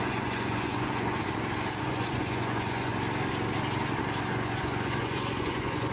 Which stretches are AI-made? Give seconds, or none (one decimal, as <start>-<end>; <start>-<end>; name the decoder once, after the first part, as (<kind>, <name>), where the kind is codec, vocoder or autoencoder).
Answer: 0.0-1.2 (vocoder, Vocos); 1.8-2.9; 4.3-5.9